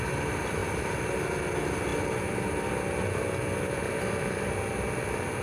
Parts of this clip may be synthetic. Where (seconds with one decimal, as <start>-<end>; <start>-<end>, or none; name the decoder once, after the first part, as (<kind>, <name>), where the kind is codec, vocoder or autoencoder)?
0.6-1.2 (vocoder, BigVGAN v2)